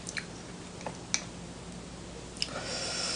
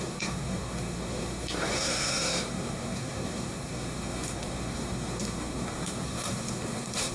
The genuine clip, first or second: first